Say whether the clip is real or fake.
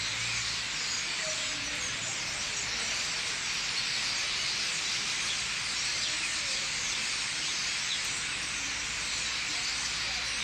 real